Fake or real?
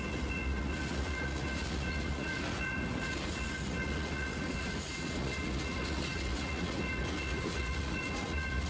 fake